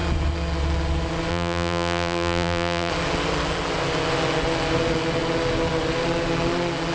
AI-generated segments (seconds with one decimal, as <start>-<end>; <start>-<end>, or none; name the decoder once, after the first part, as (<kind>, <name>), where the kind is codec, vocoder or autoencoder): 1.3-2.9 (vocoder, BigVGAN v2)